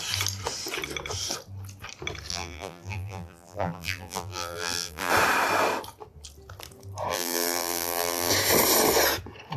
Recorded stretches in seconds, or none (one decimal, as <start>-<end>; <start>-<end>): 0.0-2.3; 5.1-7.1; 8.3-9.6